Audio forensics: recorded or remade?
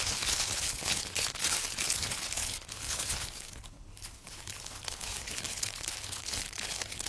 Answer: remade